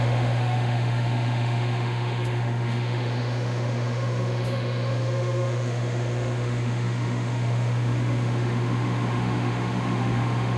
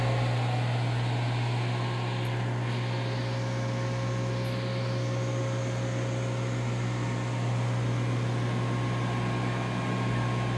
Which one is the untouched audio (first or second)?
second